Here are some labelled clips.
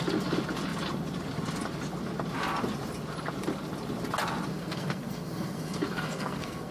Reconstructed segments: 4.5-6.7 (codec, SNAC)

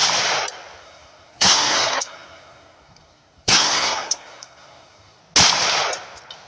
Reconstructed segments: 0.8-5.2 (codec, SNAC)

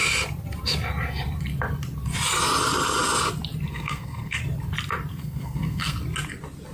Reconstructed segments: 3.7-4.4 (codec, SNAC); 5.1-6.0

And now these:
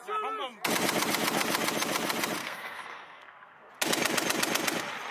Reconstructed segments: 2.4-3.7 (codec, SNAC)

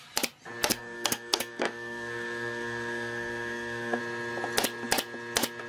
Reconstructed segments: 0.7-4.0 (codec, SNAC)

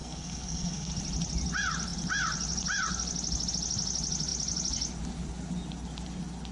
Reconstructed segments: 0.0-0.9 (codec, SNAC)

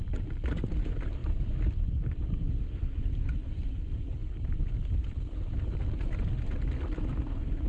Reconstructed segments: none

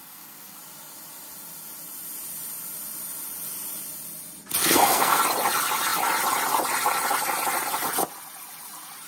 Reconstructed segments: 0.0-0.6 (codec, SNAC); 4.6-5.2